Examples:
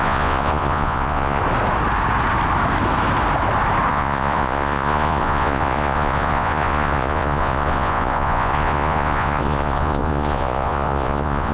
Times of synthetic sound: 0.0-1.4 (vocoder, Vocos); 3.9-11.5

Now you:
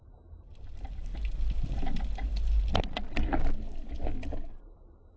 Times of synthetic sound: none